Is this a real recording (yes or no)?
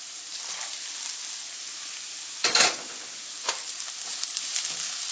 yes